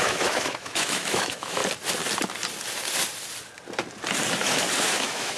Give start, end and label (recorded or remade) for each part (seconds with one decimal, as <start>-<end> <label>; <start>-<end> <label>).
0.0-1.6 remade; 1.6-4.8 recorded; 4.8-5.4 remade